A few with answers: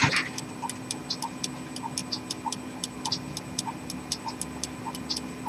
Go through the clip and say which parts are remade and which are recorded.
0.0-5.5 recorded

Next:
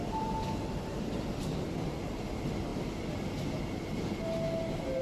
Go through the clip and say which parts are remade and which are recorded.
0.0-5.0 recorded

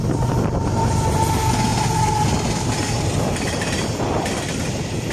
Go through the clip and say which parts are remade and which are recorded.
0.0-1.7 recorded; 1.7-5.1 remade

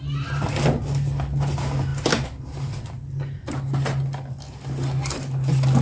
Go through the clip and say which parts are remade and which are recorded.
0.0-5.8 recorded

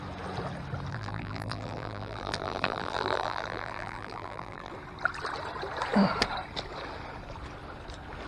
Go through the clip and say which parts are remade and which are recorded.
0.0-0.9 recorded; 0.9-4.7 remade; 4.7-8.3 recorded

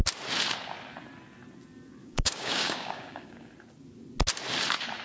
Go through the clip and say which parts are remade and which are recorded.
0.0-2.0 recorded; 2.0-3.5 remade; 3.5-5.0 recorded